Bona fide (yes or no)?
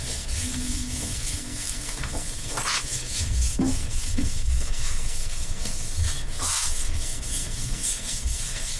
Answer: no